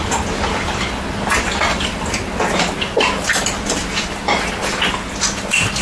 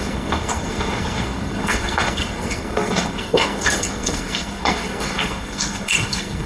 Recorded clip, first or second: first